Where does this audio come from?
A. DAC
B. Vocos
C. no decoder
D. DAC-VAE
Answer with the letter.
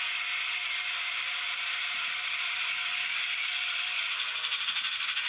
C